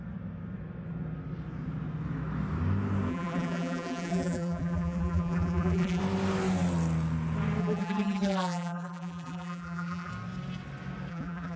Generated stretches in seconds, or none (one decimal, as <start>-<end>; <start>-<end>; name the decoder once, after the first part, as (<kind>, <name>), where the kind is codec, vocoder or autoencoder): 3.1-6.0 (vocoder, BigVGAN v2); 7.6-10.1; 11.1-11.6